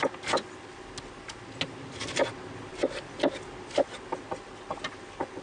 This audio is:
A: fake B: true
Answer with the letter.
B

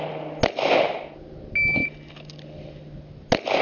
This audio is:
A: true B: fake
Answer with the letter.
A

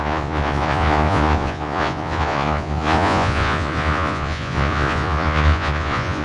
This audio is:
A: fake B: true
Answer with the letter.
A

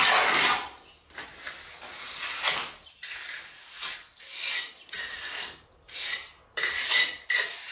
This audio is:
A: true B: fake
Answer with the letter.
A